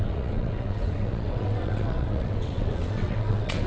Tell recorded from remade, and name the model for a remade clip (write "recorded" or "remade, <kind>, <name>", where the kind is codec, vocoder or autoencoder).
remade, vocoder, WaveNeXt